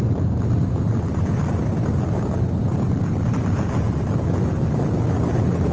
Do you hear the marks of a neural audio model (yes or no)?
no